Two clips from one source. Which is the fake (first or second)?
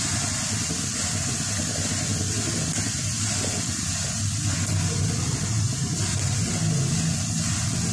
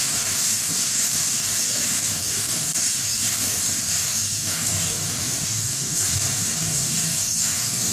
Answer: second